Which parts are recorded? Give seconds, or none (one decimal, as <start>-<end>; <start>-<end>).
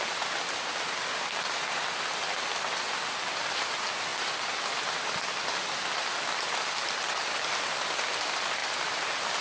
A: 0.0-9.4